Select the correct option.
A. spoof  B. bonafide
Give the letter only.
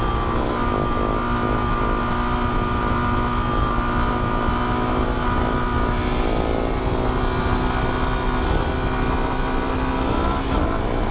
B